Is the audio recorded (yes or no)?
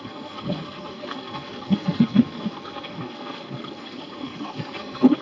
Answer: no